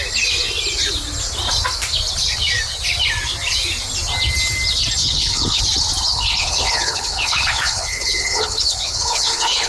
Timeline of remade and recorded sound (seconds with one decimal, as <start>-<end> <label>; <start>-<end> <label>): 0.0-5.0 recorded; 5.0-5.6 remade; 5.6-6.1 recorded; 6.1-9.7 remade